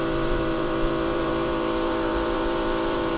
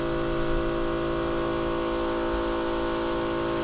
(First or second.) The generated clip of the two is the first